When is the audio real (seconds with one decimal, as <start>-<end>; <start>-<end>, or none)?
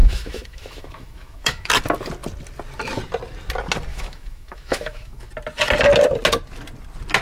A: 1.7-3.9; 5.3-7.2